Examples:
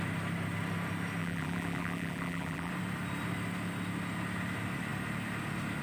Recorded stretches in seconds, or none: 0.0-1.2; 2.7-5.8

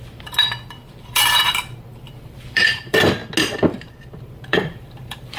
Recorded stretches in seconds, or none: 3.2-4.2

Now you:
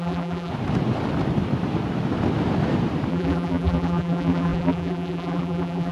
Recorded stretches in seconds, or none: 0.5-3.1

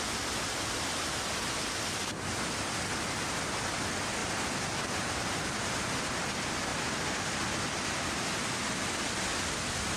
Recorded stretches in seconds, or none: 0.0-10.0

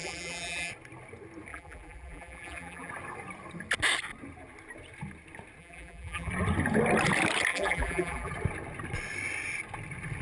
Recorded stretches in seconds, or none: 0.7-1.5; 2.9-5.6; 6.3-7.5; 8.3-10.2

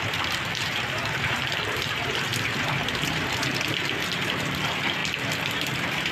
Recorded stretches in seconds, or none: 5.0-5.6